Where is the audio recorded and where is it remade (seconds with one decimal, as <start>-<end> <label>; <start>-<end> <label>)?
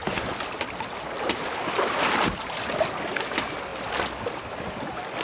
0.0-5.2 recorded